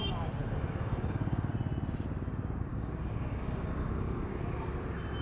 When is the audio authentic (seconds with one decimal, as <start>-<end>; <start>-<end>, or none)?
0.0-0.4; 1.5-2.7; 4.4-5.2

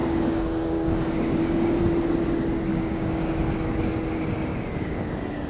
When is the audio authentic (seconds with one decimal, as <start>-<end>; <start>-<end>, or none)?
1.8-2.7; 3.3-4.5; 5.1-5.5